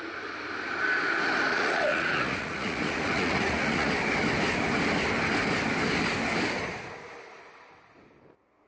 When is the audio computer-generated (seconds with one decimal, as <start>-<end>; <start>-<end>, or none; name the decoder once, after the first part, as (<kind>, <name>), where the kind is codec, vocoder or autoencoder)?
1.5-3.9 (vocoder, Vocos)